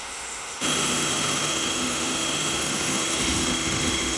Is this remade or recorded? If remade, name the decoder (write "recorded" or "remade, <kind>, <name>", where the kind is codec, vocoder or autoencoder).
remade, autoencoder, DAC-VAE